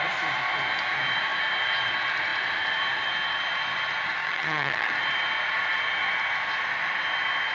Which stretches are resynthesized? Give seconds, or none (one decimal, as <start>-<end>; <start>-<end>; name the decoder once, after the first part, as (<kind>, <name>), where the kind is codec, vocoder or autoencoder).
4.2-4.9 (vocoder, HiFi-GAN)